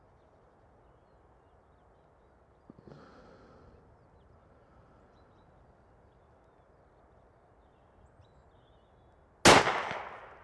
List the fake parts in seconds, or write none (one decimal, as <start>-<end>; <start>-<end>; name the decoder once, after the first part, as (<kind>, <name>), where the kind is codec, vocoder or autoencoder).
none